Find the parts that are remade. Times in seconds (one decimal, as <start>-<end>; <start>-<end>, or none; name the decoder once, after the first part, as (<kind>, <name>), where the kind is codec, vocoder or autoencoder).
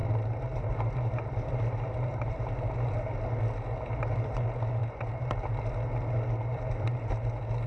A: 0.0-3.1 (vocoder, BigVGAN v2); 4.8-5.3; 6.5-7.1